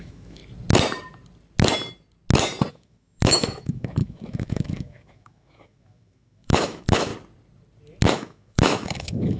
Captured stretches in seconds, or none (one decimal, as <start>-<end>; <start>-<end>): 0.4-2.7; 7.1-8.1